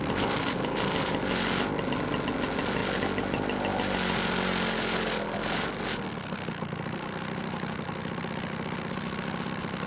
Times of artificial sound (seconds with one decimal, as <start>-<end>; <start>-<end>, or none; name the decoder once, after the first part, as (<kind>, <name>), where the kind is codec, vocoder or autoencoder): none